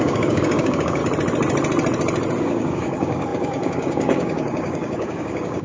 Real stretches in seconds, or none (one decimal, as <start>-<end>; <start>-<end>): 1.0-2.4